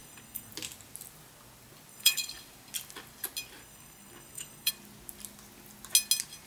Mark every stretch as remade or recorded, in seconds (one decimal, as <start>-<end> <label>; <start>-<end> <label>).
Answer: 0.0-0.5 remade; 0.5-1.9 recorded; 1.9-2.4 remade; 2.4-3.6 recorded; 3.6-4.7 remade; 4.7-6.5 recorded